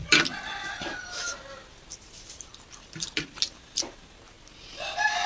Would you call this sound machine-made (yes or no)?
no